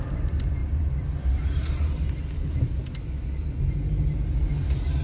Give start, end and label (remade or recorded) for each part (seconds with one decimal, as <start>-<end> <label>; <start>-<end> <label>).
0.0-5.0 recorded

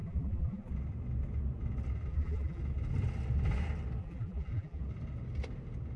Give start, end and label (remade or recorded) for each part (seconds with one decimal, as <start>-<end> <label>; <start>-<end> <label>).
0.0-0.7 remade; 0.7-2.1 recorded; 2.1-2.6 remade; 2.6-4.0 recorded; 4.0-4.8 remade; 4.8-6.0 recorded

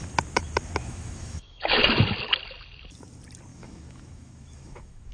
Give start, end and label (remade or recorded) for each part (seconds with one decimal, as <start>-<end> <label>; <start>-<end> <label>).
0.0-0.8 recorded; 0.8-1.8 remade; 1.8-3.5 recorded; 3.5-5.1 remade

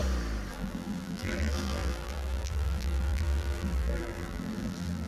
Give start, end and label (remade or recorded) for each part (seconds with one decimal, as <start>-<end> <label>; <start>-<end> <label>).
0.0-0.5 recorded; 0.5-5.1 remade

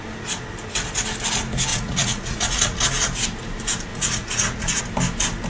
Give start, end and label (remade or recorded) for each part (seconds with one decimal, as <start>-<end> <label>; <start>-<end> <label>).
0.0-1.7 recorded; 1.7-2.8 remade; 2.8-3.9 recorded; 3.9-4.8 remade; 4.8-5.5 recorded

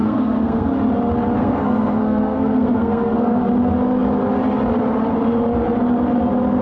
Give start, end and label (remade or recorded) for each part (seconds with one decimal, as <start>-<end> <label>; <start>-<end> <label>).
0.0-0.7 remade; 0.7-1.4 recorded; 1.4-3.4 remade; 3.4-6.6 recorded